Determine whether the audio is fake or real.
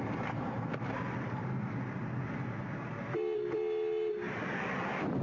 real